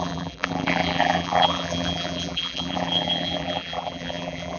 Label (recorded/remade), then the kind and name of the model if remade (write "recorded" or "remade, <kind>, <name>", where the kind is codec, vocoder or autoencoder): remade, vocoder, BigVGAN v2